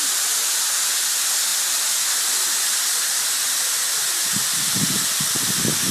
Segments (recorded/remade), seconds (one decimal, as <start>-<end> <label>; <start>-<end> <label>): 0.0-5.9 recorded